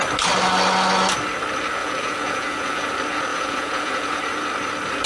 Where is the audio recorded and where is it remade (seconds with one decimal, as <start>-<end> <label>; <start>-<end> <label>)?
0.0-1.8 recorded; 1.8-2.9 remade; 2.9-3.3 recorded; 3.3-4.2 remade; 4.2-5.1 recorded